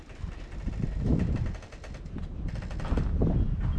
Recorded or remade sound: recorded